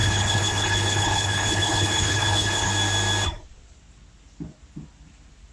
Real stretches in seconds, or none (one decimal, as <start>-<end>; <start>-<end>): 2.7-5.5